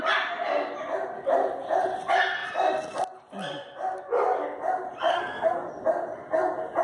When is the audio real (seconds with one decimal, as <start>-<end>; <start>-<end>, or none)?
0.0-5.1; 5.7-6.8